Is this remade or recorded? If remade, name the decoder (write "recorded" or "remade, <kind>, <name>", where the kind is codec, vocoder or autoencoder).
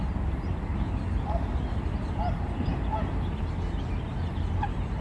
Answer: recorded